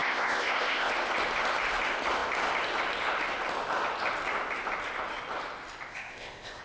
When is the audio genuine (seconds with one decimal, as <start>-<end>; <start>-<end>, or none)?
0.9-5.9